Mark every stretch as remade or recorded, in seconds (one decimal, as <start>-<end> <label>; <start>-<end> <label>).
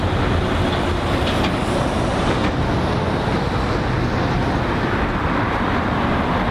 0.0-6.5 recorded